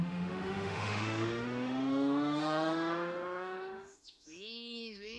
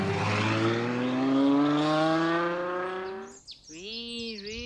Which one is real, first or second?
second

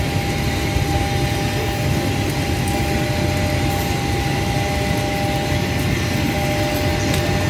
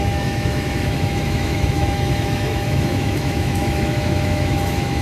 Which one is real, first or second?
first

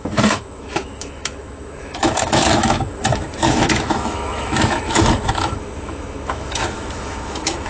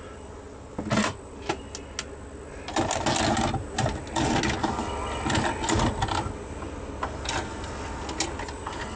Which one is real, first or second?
second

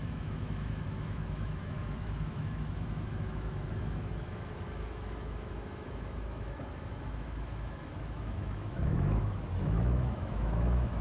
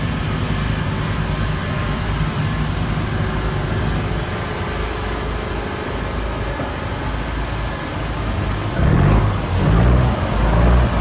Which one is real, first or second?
second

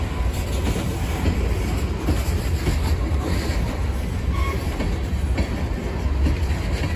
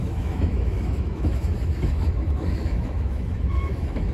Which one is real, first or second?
first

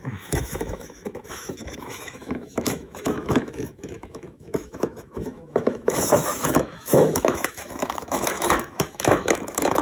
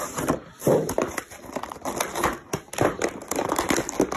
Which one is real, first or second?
second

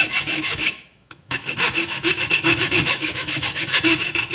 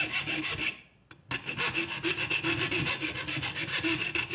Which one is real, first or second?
second